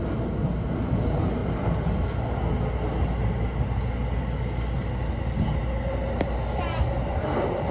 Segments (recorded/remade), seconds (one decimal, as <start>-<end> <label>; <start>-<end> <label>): 0.0-7.7 recorded

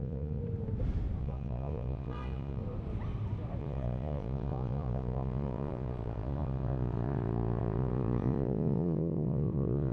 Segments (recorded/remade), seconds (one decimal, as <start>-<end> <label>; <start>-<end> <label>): 0.0-0.4 remade; 0.4-1.2 recorded; 1.2-2.6 remade; 2.6-3.6 recorded; 3.6-9.9 remade

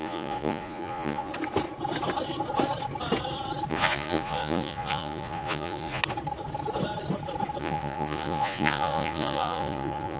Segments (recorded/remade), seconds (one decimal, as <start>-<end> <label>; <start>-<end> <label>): 0.0-1.3 remade; 1.3-3.7 recorded; 3.7-6.0 remade; 6.0-7.6 recorded; 7.6-10.2 remade

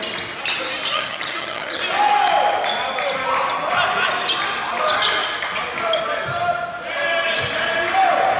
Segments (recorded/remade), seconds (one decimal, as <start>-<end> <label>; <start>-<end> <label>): 0.0-0.9 recorded; 0.9-1.8 remade; 1.8-8.4 recorded

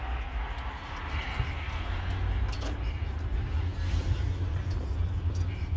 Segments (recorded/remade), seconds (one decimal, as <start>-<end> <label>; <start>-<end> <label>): 0.0-5.8 recorded

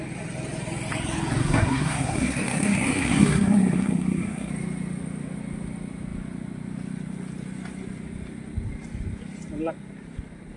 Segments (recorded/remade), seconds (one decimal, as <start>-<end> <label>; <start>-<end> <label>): 0.0-1.4 recorded; 1.4-4.5 remade; 4.5-10.6 recorded

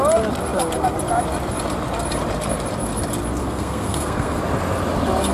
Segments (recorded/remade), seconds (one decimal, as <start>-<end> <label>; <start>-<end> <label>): 0.0-3.4 recorded; 3.4-4.4 remade; 4.4-5.3 recorded

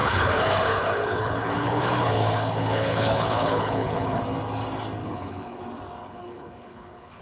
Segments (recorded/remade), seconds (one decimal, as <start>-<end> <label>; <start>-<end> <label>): 0.0-4.2 remade; 4.2-5.0 recorded; 5.0-5.6 remade; 5.6-6.0 recorded; 6.0-7.2 remade